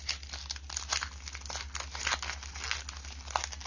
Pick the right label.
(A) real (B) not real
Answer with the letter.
A